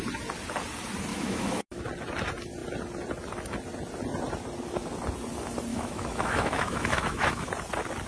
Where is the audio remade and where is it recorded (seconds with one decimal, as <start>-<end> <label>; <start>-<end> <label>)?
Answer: 0.0-1.1 recorded; 1.1-1.8 remade; 1.8-5.7 recorded; 5.7-7.5 remade; 7.5-8.1 recorded